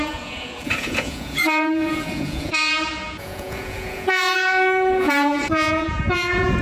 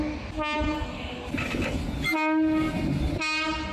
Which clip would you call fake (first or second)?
first